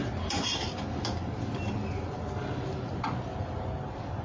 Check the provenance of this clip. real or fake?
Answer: real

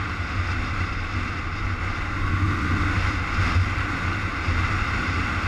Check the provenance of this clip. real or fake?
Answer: real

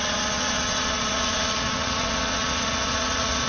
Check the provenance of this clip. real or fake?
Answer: fake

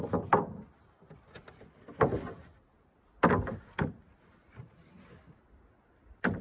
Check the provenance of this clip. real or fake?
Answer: real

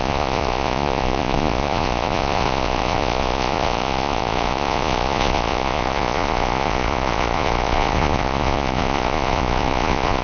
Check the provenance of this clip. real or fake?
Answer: fake